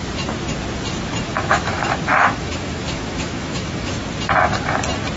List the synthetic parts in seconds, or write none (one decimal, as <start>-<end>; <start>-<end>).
1.3-1.8; 2.2-3.9

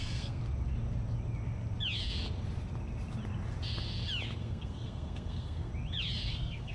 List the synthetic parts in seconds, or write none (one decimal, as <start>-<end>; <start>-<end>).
0.0-0.4; 4.4-5.7; 6.3-6.7

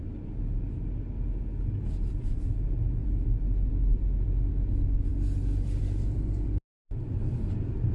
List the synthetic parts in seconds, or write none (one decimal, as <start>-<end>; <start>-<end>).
3.0-3.7

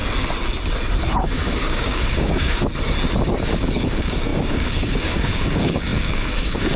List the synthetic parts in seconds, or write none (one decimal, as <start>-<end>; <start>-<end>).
1.2-2.7; 3.6-6.8

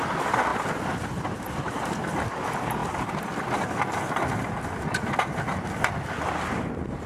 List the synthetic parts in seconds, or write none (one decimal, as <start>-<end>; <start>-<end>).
none

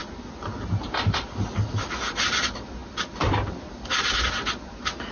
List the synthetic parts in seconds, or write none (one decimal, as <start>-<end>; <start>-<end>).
none

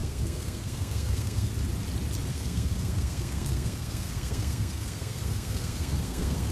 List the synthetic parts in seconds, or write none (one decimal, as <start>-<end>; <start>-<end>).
0.0-1.5; 2.3-6.5

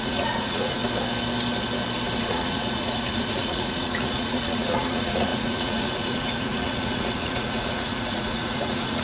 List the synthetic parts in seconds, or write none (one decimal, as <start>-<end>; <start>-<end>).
0.0-0.8; 2.2-9.0